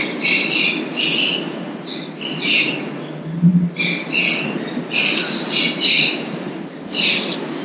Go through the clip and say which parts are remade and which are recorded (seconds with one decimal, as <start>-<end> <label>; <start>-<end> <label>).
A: 0.0-7.6 recorded